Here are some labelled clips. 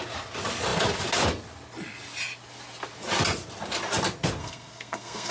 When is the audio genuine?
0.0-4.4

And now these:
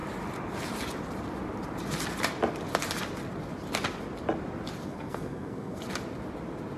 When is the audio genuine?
0.0-4.8; 5.8-6.8

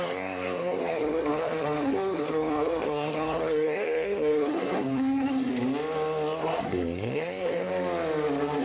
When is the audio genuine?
5.5-6.4; 7.7-8.6

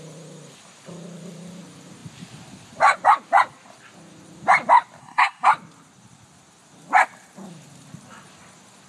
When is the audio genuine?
0.0-5.0; 5.5-8.9